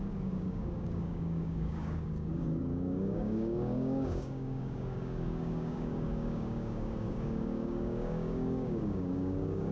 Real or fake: fake